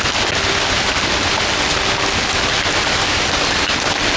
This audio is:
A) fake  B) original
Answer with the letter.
B